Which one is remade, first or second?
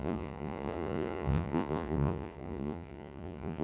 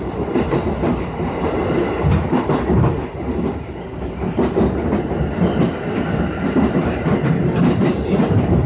first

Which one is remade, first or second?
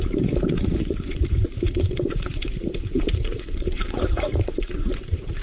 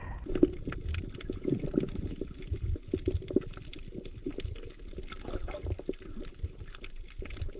first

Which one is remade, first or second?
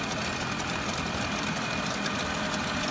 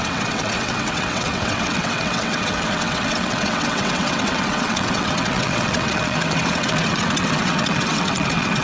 second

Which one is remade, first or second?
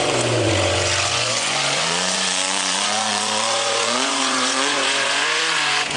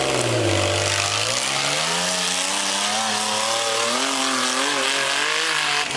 first